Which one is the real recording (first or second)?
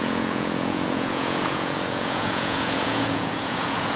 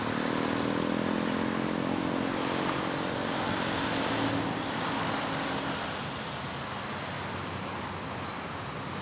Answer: second